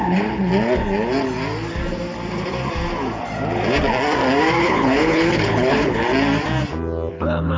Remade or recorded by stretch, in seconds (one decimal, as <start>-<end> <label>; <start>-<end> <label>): 0.0-0.5 remade; 0.5-4.6 recorded; 4.6-6.0 remade; 6.0-7.1 recorded; 7.1-7.6 remade